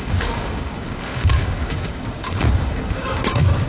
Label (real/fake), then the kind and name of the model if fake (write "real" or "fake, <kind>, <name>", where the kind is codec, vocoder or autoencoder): fake, codec, DAC